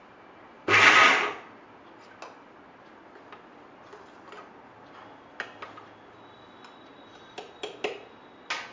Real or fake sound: real